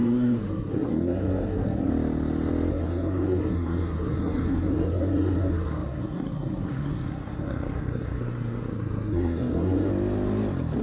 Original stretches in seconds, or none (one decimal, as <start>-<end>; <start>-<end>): 1.9-2.7; 9.9-10.8